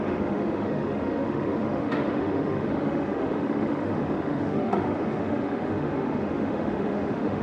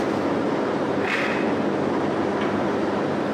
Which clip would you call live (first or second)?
second